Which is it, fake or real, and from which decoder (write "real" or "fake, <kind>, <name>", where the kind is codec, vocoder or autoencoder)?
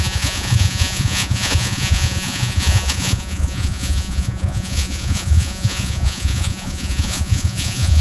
fake, vocoder, Vocos